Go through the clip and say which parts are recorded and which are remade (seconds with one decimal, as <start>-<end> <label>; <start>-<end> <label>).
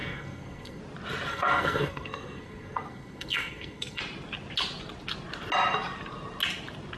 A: 0.0-0.8 remade; 0.8-1.3 recorded; 1.3-4.0 remade; 4.0-7.0 recorded